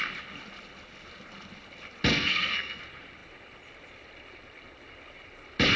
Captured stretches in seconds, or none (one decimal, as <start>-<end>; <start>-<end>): 0.0-2.1; 2.8-5.8